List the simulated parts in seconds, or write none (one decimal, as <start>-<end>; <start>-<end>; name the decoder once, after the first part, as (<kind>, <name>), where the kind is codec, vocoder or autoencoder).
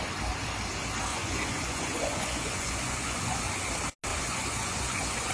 1.1-3.4 (vocoder, Vocos); 4.1-5.3